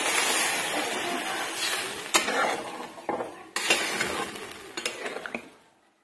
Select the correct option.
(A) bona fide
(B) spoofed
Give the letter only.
A